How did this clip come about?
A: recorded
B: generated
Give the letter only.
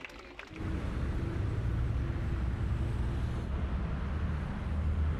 A